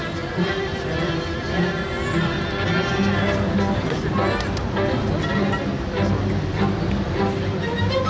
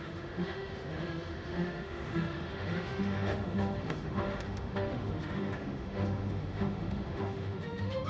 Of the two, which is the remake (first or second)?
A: second